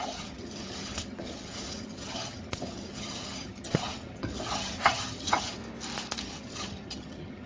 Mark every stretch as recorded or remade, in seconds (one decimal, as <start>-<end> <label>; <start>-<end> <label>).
0.0-5.6 remade; 5.6-6.2 recorded; 6.2-7.5 remade